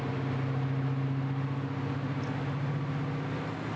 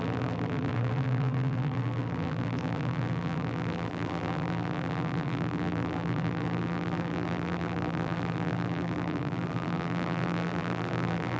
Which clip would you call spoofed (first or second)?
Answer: second